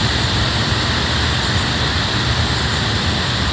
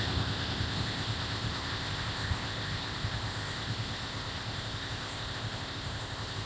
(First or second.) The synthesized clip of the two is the second